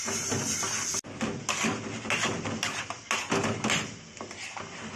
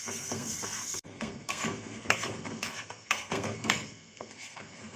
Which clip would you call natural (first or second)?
first